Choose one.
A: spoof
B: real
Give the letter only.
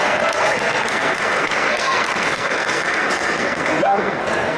A